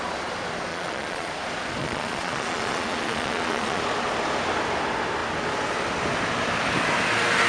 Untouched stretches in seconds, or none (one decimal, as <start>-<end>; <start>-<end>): 0.0-0.7; 1.3-1.8; 3.8-7.5